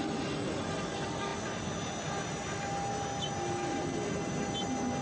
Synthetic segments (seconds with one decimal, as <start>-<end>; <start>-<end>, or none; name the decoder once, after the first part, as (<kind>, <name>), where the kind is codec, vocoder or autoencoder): none